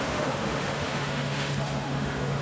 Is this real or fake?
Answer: fake